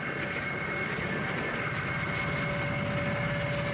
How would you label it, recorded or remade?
recorded